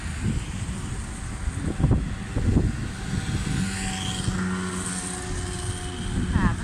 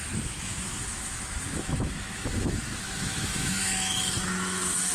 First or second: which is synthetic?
second